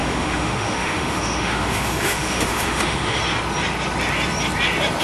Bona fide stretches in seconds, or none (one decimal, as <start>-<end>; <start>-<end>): 3.2-5.0